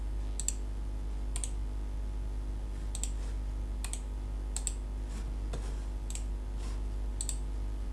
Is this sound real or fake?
real